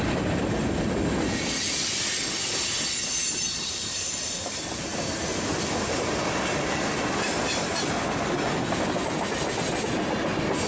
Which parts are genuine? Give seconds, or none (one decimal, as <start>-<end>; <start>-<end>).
0.0-10.7